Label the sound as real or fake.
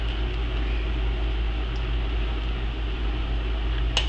real